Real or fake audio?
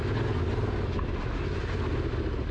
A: real